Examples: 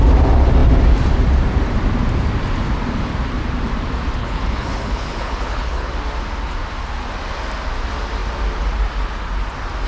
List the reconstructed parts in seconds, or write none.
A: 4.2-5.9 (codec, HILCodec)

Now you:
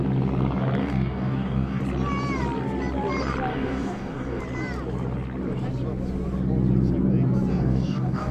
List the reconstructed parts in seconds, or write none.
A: 0.8-1.8 (codec, DAC); 3.5-4.4; 7.5-8.3

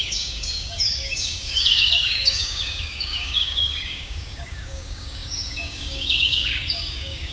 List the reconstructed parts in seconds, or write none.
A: 0.0-7.3 (codec, DAC)